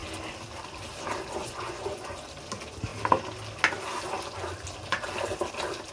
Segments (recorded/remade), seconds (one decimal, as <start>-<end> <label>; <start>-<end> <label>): 0.0-1.4 recorded; 1.4-2.3 remade; 2.3-5.9 recorded